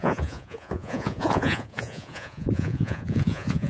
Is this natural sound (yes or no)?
no